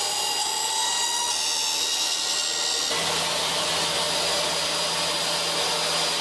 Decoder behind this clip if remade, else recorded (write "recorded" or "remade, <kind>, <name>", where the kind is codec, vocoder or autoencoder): recorded